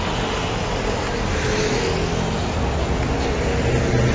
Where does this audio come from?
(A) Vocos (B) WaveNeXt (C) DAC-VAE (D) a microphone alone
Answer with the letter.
D